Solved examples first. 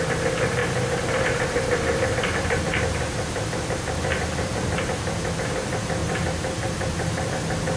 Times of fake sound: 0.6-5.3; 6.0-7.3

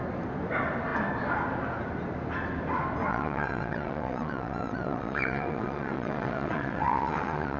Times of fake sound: 3.1-7.6

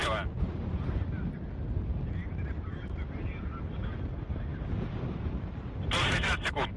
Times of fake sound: 2.2-5.7

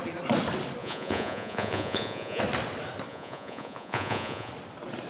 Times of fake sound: 0.8-2.4; 3.1-4.5

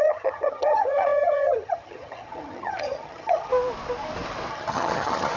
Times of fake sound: 0.0-3.5; 4.5-5.4

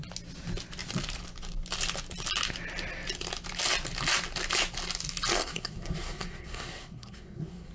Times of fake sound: 5.4-7.7

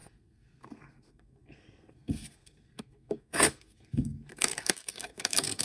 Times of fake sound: 0.0-5.6

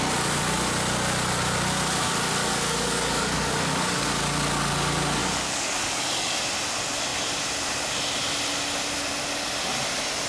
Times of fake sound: 2.4-4.2; 5.2-6.4